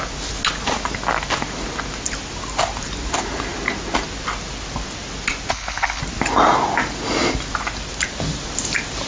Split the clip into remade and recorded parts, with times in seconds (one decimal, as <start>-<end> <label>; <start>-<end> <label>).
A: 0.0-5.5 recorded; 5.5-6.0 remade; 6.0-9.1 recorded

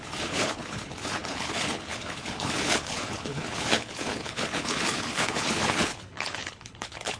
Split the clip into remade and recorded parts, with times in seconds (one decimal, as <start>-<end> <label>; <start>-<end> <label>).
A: 0.0-7.2 remade

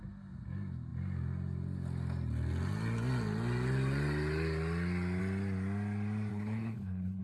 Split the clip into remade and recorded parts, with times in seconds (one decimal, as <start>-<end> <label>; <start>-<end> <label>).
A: 0.0-6.3 recorded; 6.3-7.2 remade